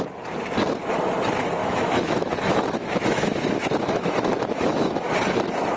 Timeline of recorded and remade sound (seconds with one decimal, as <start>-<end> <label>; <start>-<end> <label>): 0.0-1.6 recorded; 1.6-5.1 remade; 5.1-5.8 recorded